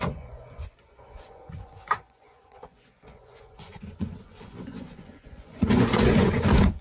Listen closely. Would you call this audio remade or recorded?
remade